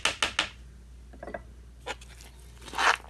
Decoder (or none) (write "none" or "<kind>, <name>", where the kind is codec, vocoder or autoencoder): none